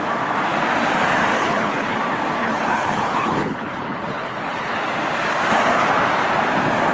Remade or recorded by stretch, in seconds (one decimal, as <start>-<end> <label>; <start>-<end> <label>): 0.0-1.3 recorded; 1.3-2.0 remade; 2.0-2.4 recorded; 2.4-4.8 remade; 4.8-6.9 recorded